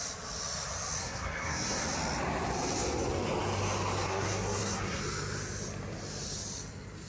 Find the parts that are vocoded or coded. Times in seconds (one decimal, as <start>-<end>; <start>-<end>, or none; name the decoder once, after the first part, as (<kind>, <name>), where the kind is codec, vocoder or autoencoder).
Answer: 1.0-1.8 (codec, SNAC); 4.1-5.0

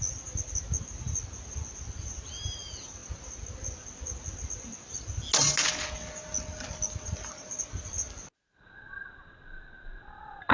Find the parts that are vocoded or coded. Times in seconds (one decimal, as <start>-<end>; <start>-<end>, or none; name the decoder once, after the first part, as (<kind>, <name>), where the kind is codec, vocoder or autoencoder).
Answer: none

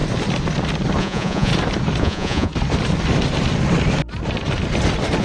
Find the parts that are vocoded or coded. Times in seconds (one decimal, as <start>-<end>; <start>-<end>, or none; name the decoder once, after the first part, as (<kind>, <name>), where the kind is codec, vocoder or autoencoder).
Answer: 1.0-1.5 (vocoder, Vocos); 2.0-2.5

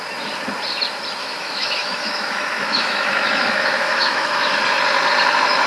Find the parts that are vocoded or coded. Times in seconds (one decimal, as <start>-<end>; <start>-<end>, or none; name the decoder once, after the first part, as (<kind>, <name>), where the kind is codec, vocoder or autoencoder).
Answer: 1.2-4.6 (autoencoder, DAC-VAE)

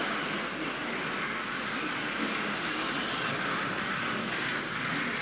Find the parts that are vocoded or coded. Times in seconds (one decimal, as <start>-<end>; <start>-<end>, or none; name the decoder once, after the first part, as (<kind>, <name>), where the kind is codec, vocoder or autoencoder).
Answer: none

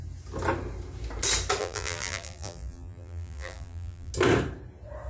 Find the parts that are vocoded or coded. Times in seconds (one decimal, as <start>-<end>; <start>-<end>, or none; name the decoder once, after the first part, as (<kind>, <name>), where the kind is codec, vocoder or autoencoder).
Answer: 1.6-4.1 (vocoder, BigVGAN v2)

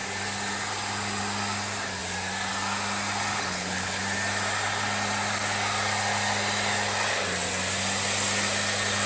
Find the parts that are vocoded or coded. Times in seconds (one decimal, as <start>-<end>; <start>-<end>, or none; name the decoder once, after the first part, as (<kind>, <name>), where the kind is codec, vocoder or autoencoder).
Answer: 3.3-4.0 (codec, HILCodec)